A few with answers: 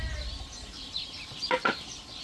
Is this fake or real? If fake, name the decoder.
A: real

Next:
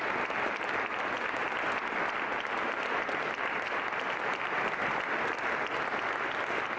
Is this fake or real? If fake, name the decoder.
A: real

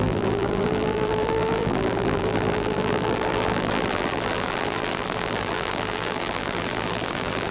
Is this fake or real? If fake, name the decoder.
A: fake, vocoder, BigVGAN v2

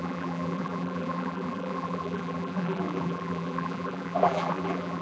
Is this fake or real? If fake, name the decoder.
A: fake, vocoder, BigVGAN v2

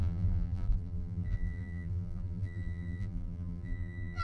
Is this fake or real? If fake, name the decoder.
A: fake, vocoder, BigVGAN v2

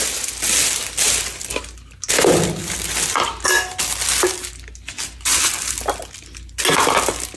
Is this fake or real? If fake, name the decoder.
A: real